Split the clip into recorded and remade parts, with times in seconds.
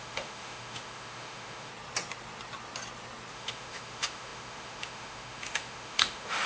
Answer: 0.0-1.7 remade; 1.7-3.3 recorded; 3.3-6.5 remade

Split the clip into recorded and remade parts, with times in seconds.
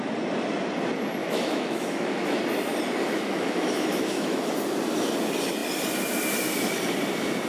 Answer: 0.0-1.2 recorded; 1.2-2.4 remade; 2.4-3.0 recorded; 3.0-4.5 remade; 4.5-7.5 recorded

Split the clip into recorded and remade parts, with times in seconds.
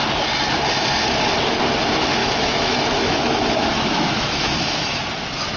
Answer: 0.0-2.2 recorded; 2.2-5.0 remade; 5.0-5.6 recorded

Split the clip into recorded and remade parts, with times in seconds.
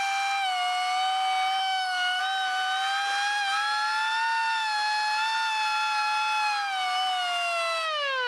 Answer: 0.0-1.6 recorded; 1.6-2.2 remade; 2.2-8.3 recorded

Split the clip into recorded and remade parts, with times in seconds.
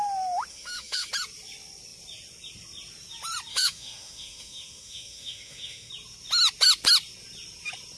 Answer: 0.0-0.5 recorded; 0.5-1.1 remade; 1.1-3.5 recorded; 3.5-5.9 remade; 5.9-8.0 recorded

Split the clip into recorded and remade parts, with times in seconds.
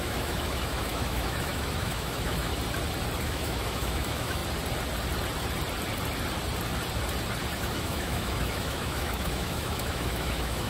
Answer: 0.0-2.5 remade; 2.5-3.2 recorded; 3.2-4.4 remade; 4.4-7.6 recorded; 7.6-10.7 remade